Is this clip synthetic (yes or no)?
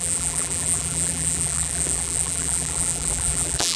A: yes